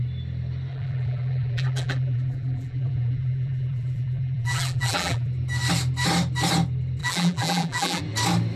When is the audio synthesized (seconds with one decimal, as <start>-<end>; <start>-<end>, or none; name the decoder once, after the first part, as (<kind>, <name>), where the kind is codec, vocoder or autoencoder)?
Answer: 0.7-5.3 (vocoder, BigVGAN v2); 7.0-8.0

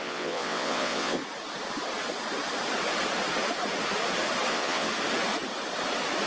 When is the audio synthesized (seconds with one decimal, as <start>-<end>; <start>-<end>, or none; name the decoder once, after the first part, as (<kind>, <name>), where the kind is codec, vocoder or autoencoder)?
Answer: 0.0-1.2 (vocoder, WaveNeXt); 4.5-4.9